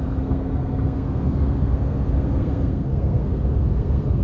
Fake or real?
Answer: fake